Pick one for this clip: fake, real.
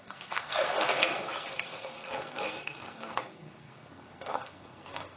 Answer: fake